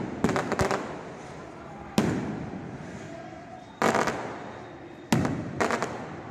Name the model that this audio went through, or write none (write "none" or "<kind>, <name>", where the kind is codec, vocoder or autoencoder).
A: none